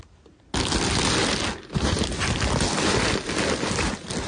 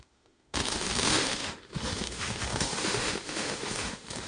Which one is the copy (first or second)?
second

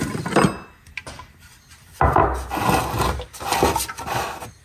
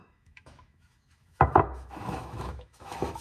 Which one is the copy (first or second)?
second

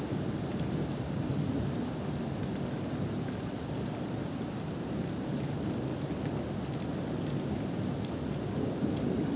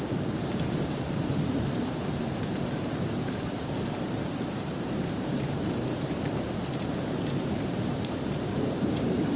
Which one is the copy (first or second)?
second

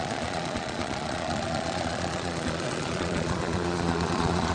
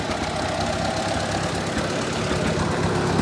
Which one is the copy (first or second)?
first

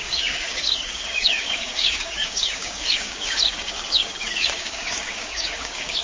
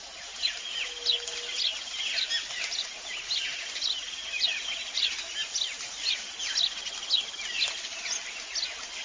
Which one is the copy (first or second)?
first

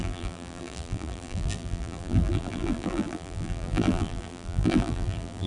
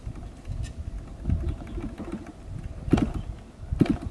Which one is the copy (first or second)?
first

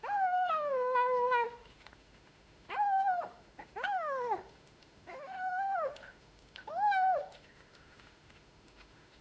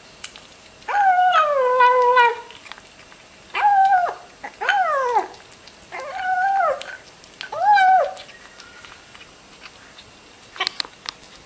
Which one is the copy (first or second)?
first